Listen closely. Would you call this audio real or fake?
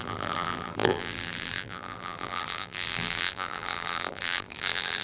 fake